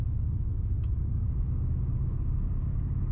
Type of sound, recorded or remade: recorded